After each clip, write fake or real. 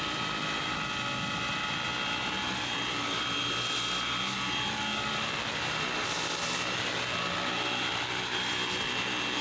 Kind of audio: real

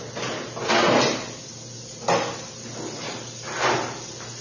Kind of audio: real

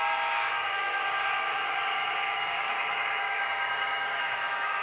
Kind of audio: fake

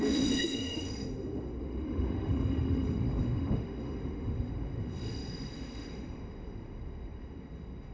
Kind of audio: fake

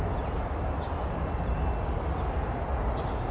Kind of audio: real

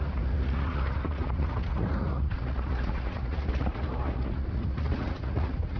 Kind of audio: fake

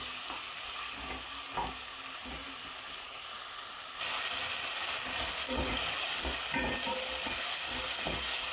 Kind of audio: real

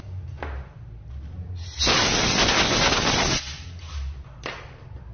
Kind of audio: real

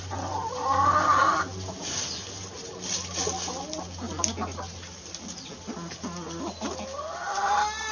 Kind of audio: real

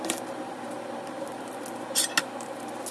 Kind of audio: real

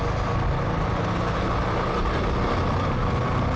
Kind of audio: real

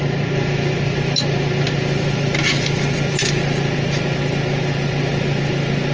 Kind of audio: real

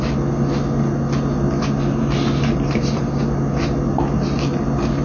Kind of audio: real